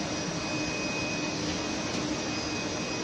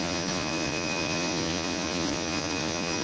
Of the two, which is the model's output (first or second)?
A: second